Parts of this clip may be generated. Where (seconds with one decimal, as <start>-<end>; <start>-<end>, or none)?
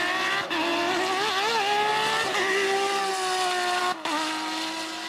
none